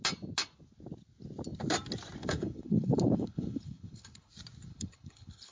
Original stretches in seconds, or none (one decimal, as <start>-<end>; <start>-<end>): 0.0-2.2; 4.3-4.7